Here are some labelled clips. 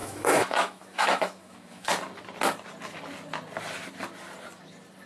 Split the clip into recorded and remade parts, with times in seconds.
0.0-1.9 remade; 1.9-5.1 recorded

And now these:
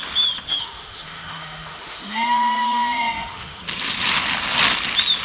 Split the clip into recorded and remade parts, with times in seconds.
0.0-0.5 recorded; 0.5-3.6 remade; 3.6-5.2 recorded

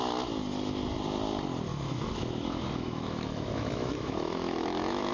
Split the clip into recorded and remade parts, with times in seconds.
0.0-1.7 recorded; 1.7-5.1 remade

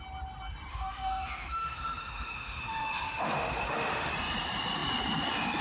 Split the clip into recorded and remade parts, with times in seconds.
0.0-0.7 recorded; 0.7-4.1 remade; 4.1-5.6 recorded